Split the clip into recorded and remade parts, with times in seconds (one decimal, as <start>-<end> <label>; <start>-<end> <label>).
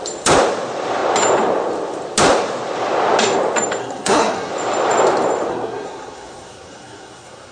0.0-3.8 recorded; 3.8-4.5 remade; 4.5-5.5 recorded; 5.5-7.5 remade